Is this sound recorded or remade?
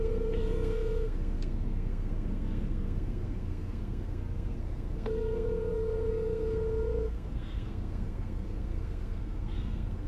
remade